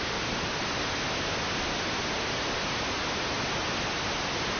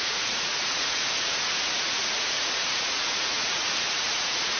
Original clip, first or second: first